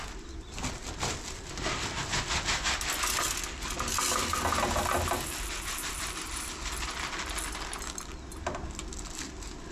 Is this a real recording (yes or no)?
yes